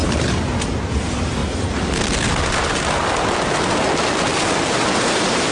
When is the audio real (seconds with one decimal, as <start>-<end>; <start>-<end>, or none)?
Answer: 0.0-0.8; 1.4-4.7